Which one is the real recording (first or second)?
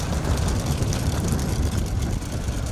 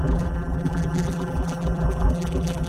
first